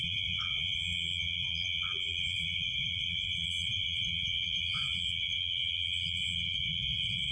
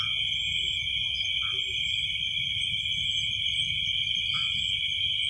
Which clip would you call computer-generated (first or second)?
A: first